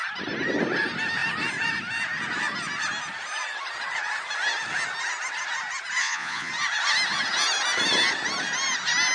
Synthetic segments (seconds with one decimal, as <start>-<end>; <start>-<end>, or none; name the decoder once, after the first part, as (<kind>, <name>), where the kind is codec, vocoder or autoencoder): 6.0-6.5 (vocoder, Vocos)